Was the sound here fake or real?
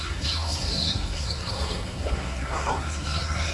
fake